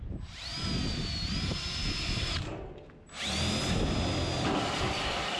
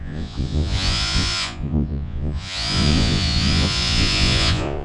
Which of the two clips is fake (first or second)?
second